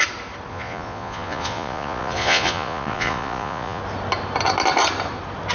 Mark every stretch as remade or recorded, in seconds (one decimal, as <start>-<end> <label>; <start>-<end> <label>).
0.0-0.5 recorded; 0.5-3.8 remade; 3.8-5.5 recorded